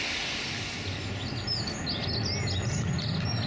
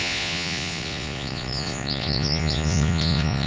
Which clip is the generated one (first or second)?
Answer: second